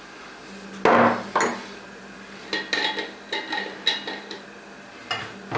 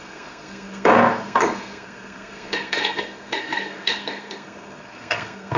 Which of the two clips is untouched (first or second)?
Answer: first